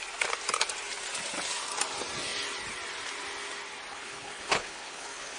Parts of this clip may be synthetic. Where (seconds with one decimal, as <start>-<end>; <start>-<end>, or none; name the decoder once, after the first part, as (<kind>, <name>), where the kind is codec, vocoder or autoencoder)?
3.9-5.4 (codec, HILCodec)